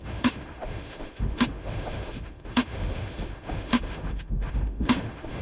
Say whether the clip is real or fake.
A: fake